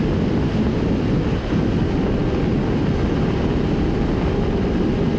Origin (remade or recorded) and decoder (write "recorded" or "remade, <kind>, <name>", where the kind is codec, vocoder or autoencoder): recorded